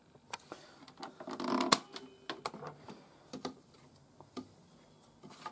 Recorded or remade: recorded